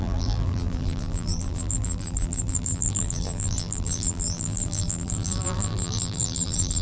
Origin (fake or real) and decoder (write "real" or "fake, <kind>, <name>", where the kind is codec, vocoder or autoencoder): fake, vocoder, BigVGAN v2